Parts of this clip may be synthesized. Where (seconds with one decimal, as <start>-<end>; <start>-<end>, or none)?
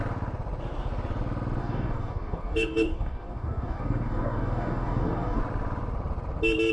1.6-5.4